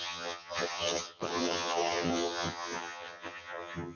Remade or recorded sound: remade